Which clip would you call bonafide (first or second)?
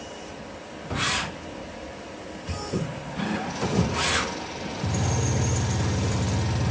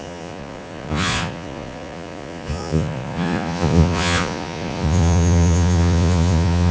first